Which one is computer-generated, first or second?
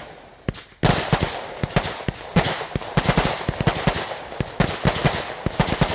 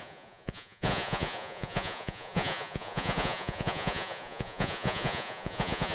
second